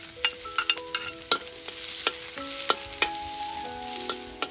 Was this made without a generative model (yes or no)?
yes